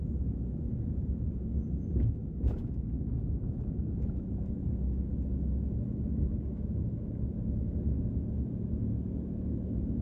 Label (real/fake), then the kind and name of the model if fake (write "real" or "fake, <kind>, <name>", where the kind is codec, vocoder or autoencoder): fake, autoencoder, DAC-VAE